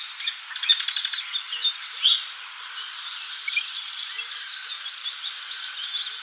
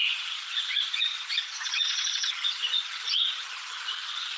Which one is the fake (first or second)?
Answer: second